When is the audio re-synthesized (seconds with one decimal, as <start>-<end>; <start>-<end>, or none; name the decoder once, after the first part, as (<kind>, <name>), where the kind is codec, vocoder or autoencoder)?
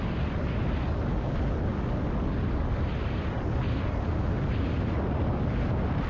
none